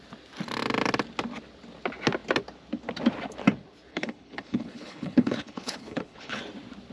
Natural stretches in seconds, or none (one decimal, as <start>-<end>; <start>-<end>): 0.0-3.9; 6.4-6.9